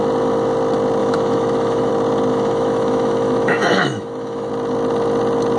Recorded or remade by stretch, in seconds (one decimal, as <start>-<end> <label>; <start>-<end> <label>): 0.0-1.0 recorded; 1.0-1.9 remade; 1.9-2.3 recorded; 2.3-4.5 remade; 4.5-5.6 recorded